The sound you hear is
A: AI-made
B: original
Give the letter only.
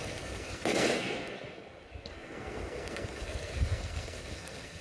A